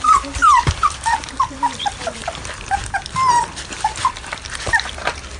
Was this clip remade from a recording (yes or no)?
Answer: yes